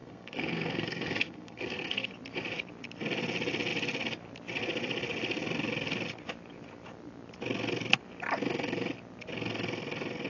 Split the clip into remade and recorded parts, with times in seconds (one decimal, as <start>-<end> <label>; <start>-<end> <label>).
0.0-2.1 remade; 2.1-10.3 recorded